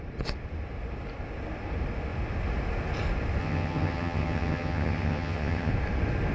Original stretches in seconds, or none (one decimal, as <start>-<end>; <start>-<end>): 0.0-3.4; 5.7-6.3